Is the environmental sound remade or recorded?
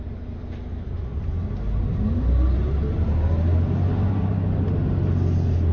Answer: recorded